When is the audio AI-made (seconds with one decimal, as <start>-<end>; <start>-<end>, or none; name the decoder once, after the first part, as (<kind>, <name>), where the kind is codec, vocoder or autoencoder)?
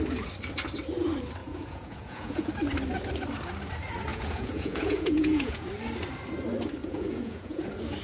1.4-2.5 (vocoder, Vocos); 4.1-5.7; 6.8-7.6